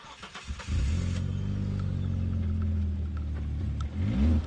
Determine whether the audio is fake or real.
real